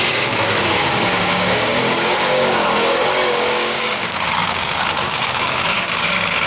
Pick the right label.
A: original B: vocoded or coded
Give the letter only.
B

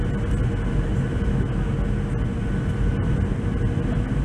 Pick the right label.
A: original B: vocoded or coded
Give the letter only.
A